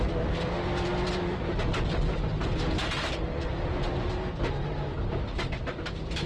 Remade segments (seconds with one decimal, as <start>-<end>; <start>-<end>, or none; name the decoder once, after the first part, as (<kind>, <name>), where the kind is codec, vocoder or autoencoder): none